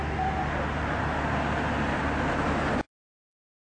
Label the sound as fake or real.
real